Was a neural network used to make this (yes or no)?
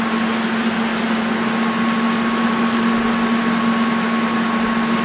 no